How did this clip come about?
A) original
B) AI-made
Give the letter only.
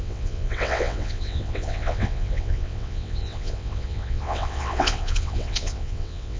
B